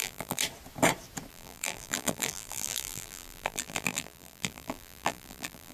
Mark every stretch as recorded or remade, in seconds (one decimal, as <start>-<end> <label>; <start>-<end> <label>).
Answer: 0.0-0.4 remade; 0.4-1.3 recorded; 1.3-5.7 remade